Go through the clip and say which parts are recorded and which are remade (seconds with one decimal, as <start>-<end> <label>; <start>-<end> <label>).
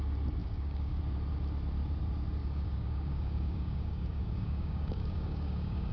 0.0-0.4 recorded; 0.4-1.0 remade; 1.0-2.4 recorded; 2.4-5.9 remade